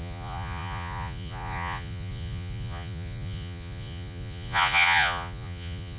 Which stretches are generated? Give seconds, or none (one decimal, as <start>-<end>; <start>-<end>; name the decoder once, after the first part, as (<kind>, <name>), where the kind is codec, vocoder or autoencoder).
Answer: 0.0-6.0 (vocoder, Vocos)